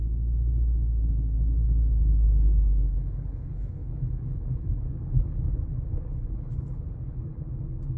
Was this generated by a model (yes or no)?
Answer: yes